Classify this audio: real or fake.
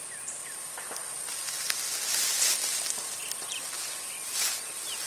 real